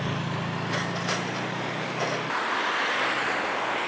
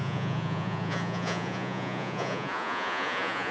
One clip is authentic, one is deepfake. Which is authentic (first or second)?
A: first